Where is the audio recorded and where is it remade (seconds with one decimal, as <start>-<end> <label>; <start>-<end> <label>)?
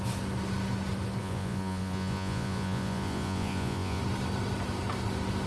0.0-1.2 recorded; 1.2-4.0 remade; 4.0-5.5 recorded